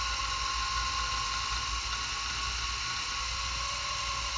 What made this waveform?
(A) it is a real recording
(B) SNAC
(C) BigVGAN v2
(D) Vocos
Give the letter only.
A